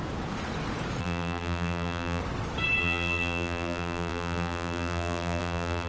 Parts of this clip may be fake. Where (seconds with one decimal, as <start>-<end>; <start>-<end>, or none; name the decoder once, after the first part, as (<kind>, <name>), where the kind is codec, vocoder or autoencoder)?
1.0-2.2 (vocoder, BigVGAN v2); 2.8-5.9